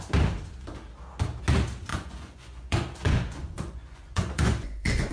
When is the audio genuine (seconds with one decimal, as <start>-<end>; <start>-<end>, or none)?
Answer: 0.0-1.9